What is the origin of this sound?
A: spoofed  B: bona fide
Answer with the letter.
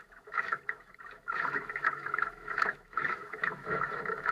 A